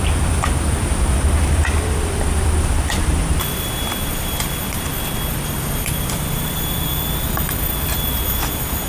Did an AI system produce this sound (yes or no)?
yes